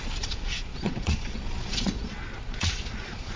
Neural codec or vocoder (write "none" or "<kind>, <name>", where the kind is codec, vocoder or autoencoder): vocoder, Vocos